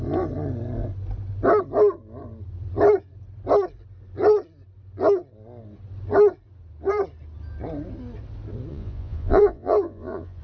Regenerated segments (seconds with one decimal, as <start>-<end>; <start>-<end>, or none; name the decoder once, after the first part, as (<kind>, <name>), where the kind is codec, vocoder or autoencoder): 8.7-10.4 (vocoder, Vocos)